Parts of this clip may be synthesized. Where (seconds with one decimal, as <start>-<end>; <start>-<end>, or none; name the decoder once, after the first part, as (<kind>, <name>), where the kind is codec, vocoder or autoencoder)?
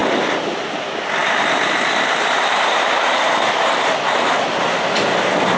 0.0-0.6 (vocoder, BigVGAN v2); 1.2-4.6